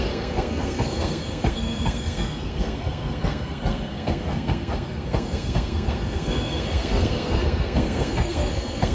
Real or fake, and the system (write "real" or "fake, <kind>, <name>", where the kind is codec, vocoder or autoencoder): fake, codec, SNAC